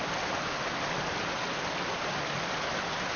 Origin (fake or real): real